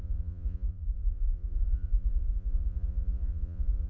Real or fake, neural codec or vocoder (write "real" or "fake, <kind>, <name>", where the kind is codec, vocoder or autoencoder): fake, vocoder, Vocos